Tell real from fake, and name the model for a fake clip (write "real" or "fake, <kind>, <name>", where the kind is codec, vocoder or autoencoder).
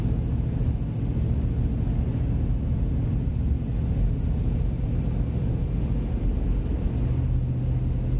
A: real